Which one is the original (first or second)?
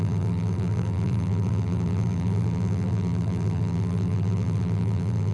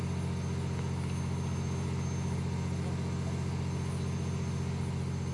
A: second